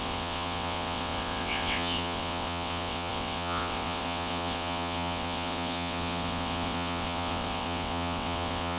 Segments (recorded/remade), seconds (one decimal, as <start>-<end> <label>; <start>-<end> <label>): 0.0-8.8 remade